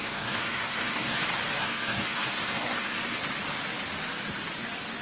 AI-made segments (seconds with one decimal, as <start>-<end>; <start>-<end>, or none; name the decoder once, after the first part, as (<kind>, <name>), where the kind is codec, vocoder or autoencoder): 0.0-1.2 (codec, SNAC); 1.6-3.2